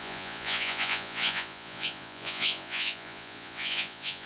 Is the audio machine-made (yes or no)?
yes